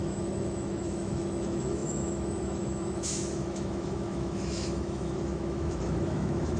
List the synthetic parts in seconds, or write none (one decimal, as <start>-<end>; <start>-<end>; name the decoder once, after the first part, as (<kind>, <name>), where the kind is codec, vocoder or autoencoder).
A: 0.0-6.6 (autoencoder, DAC-VAE)